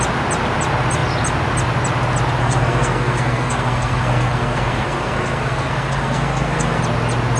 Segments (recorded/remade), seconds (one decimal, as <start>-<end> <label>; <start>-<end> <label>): 0.0-2.4 recorded; 2.4-6.8 remade; 6.8-7.4 recorded